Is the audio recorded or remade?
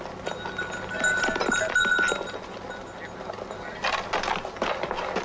recorded